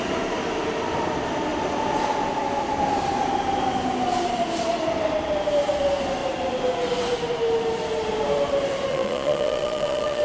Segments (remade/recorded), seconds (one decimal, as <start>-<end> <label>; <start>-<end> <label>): 0.0-8.9 recorded; 8.9-10.2 remade